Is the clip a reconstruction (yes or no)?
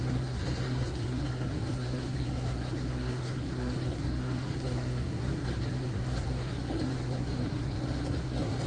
yes